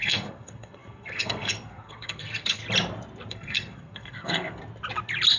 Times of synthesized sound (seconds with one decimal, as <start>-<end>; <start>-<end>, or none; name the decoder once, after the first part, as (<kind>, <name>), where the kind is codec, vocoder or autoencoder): 0.0-2.6 (codec, SNAC); 3.3-4.6